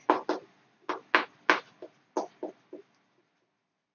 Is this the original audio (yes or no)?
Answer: yes